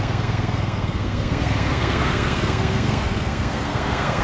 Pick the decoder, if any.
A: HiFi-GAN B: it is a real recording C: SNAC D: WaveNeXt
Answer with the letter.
C